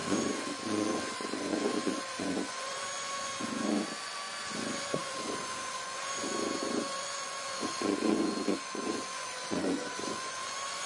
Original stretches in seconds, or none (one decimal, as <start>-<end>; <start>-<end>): none